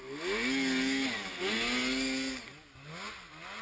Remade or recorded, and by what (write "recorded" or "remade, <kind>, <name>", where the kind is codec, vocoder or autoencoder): recorded